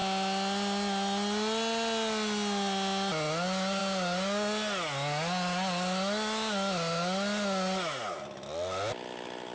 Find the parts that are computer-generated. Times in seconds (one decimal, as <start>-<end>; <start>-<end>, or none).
none